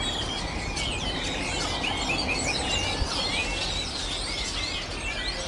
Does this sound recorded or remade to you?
recorded